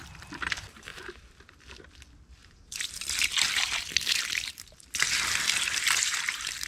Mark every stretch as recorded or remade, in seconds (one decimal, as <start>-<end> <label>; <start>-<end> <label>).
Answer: 0.0-2.4 recorded; 2.4-6.7 remade